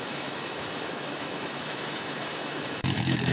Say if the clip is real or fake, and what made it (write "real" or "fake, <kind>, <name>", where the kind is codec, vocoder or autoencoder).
fake, autoencoder, DAC-VAE